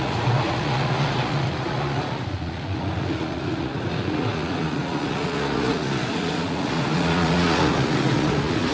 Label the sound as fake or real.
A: fake